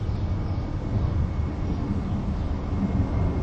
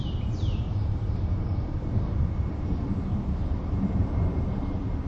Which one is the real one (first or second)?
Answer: first